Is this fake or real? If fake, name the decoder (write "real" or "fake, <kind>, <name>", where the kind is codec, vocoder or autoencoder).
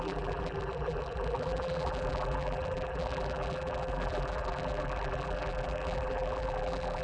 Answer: fake, vocoder, BigVGAN v2